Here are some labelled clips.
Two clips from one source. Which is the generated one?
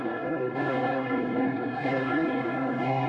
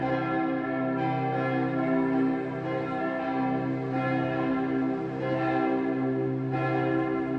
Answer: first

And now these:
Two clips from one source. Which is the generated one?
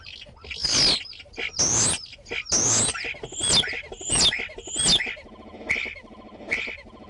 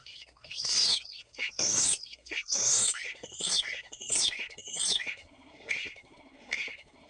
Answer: second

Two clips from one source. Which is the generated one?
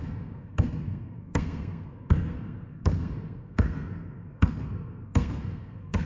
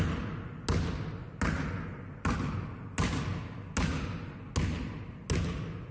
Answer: first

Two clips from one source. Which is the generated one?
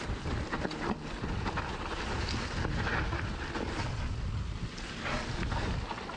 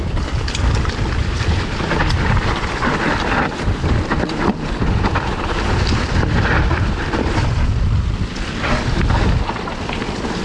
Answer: second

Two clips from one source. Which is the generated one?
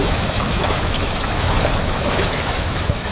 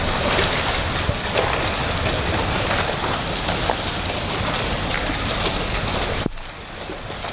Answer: first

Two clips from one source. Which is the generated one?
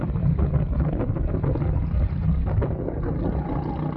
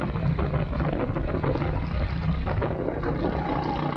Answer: first